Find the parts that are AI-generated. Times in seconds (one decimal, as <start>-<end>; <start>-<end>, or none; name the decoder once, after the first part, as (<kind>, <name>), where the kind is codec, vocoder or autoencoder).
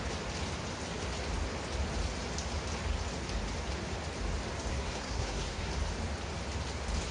4.7-5.7 (codec, SNAC)